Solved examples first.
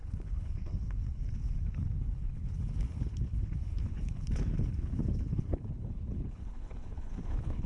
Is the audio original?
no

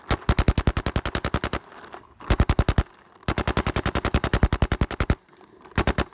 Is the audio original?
yes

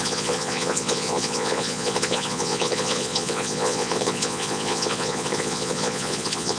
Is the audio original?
no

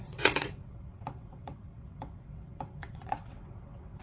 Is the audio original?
no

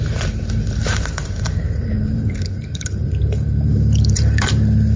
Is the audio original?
no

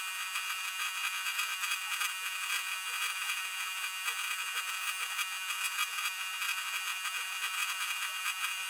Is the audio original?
no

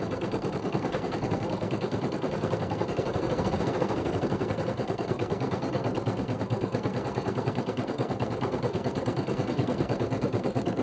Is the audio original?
no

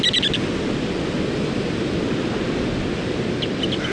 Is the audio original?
yes